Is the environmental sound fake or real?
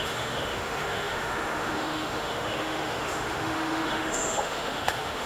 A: fake